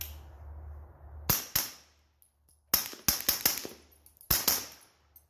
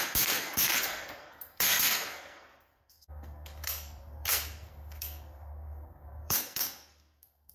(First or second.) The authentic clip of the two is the first